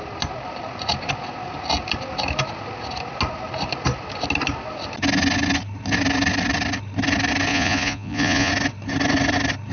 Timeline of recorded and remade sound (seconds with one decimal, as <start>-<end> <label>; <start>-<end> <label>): 0.0-7.5 recorded; 7.5-8.5 remade; 8.5-9.7 recorded